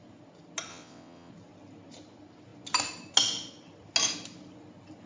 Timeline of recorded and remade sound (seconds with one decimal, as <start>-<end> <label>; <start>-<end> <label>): 0.0-0.7 recorded; 0.7-1.3 remade; 1.3-5.1 recorded